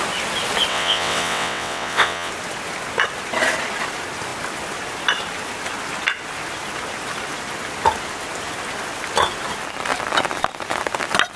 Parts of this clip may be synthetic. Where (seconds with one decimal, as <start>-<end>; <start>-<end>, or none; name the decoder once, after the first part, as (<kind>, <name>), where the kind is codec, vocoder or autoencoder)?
0.7-2.3 (vocoder, WaveNeXt)